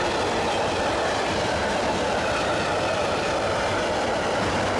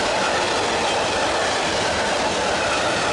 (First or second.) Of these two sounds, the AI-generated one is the second